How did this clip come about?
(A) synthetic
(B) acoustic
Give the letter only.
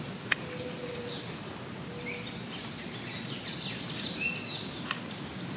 B